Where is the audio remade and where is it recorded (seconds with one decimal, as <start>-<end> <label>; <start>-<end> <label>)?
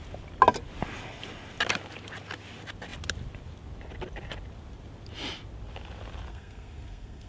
0.0-6.3 recorded; 6.3-7.3 remade